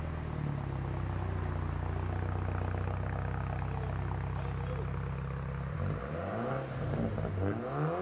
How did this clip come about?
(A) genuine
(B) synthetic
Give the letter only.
A